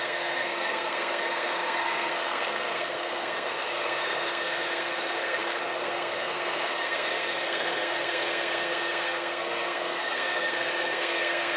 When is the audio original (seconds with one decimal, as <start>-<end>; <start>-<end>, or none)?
none